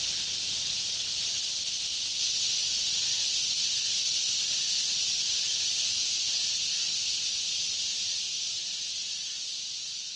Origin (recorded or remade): recorded